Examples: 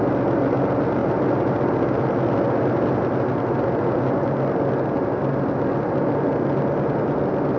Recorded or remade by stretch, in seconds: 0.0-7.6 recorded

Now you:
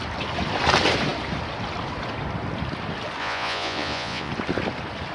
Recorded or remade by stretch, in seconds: 0.0-3.2 recorded; 3.2-4.3 remade; 4.3-5.1 recorded

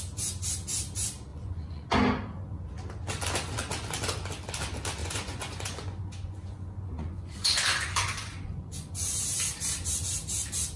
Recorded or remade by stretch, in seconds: 0.0-1.3 recorded; 1.3-1.9 remade; 1.9-5.0 recorded; 5.0-9.1 remade; 9.1-10.8 recorded

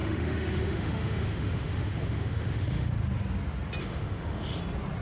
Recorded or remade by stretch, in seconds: 0.0-2.9 remade; 2.9-3.8 recorded; 3.8-4.6 remade; 4.6-5.0 recorded

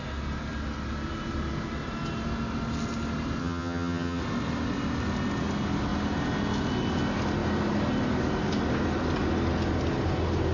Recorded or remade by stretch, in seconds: 0.0-3.4 recorded; 3.4-4.2 remade; 4.2-10.5 recorded

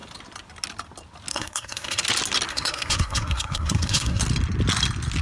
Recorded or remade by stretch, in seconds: 0.0-1.3 recorded; 1.3-2.0 remade; 2.0-2.5 recorded; 2.5-4.2 remade; 4.2-5.2 recorded

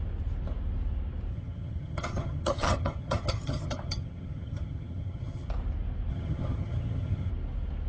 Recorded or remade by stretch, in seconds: 0.0-1.3 recorded; 1.3-5.5 remade; 5.5-6.1 recorded; 6.1-7.3 remade; 7.3-7.9 recorded